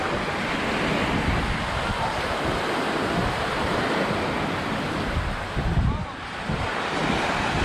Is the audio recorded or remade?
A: recorded